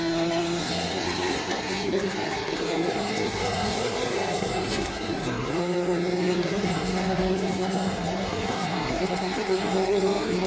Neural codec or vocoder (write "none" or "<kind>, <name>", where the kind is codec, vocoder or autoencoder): codec, SNAC